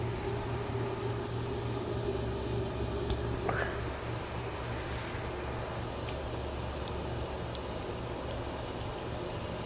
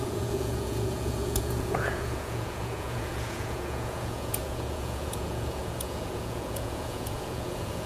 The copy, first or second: second